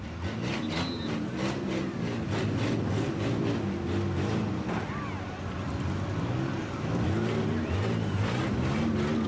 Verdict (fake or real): real